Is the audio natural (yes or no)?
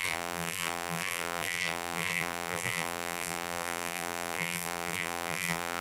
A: no